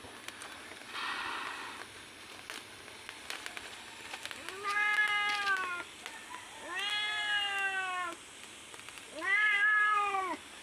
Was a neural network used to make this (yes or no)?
no